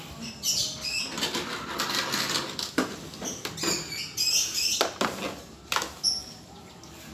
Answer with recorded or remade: recorded